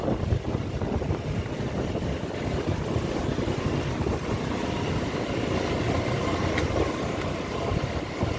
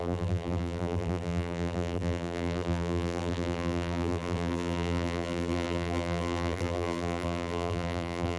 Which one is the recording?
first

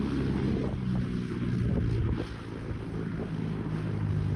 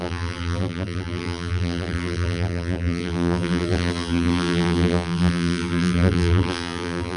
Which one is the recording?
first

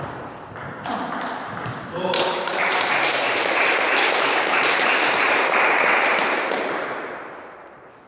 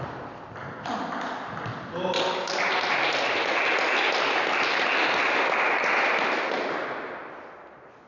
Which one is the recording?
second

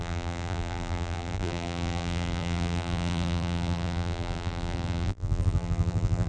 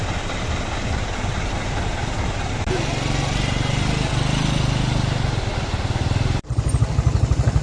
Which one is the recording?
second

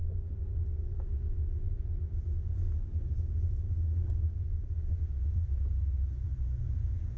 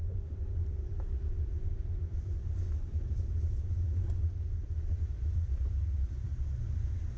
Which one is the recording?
first